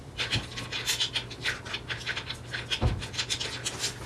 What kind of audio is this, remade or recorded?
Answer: recorded